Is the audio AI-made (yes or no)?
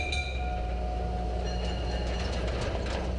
no